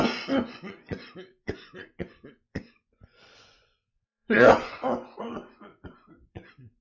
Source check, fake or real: fake